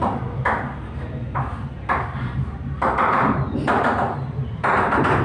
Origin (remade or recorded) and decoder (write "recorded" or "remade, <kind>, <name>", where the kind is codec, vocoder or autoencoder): remade, vocoder, BigVGAN v2